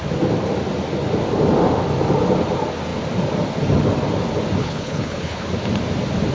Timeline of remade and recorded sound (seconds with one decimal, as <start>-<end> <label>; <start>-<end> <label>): 0.0-4.6 recorded; 4.6-5.5 remade; 5.5-6.3 recorded